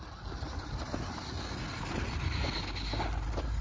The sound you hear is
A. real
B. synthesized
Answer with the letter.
A